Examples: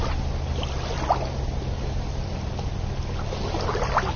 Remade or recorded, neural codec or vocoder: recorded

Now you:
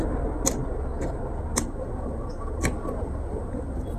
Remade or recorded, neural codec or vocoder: recorded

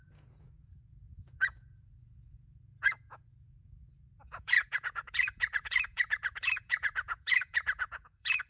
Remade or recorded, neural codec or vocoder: remade, vocoder, Vocos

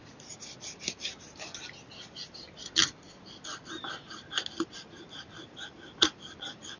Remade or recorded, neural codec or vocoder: recorded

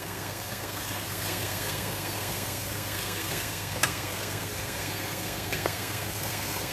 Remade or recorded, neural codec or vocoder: remade, codec, SNAC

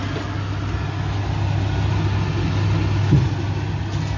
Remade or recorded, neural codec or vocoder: recorded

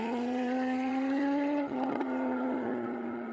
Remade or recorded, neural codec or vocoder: remade, vocoder, HiFi-GAN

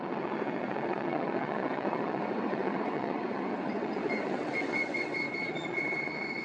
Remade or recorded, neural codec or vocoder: remade, vocoder, WaveNeXt